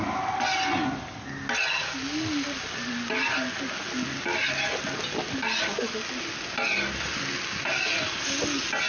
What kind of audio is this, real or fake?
real